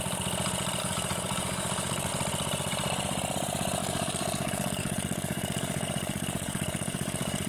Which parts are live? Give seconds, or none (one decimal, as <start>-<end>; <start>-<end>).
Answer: 0.0-0.8; 2.1-3.8